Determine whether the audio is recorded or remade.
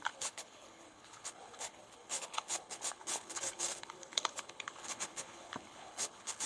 remade